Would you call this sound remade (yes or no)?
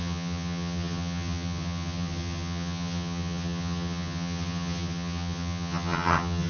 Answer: yes